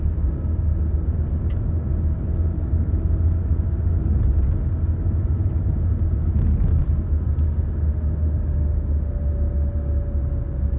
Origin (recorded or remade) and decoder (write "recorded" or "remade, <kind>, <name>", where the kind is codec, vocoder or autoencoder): recorded